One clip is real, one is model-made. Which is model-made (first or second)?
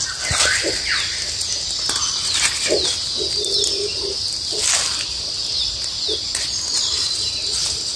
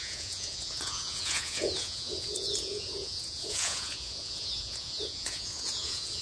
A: second